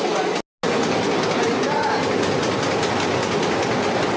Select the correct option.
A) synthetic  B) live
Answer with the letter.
B